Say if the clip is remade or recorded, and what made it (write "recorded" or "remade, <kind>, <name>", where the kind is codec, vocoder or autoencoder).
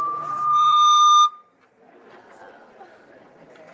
remade, vocoder, BigVGAN v2